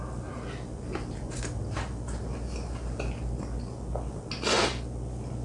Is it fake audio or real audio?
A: real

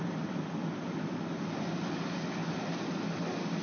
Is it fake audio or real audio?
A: real